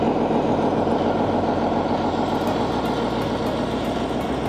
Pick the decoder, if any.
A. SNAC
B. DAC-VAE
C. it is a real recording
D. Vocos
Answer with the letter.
C